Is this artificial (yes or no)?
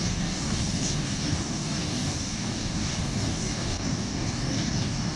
yes